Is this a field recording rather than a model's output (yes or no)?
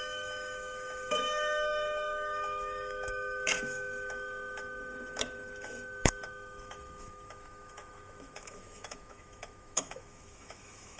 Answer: no